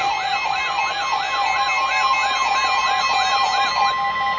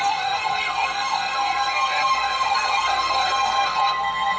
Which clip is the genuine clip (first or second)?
first